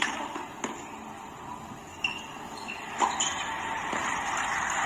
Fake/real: real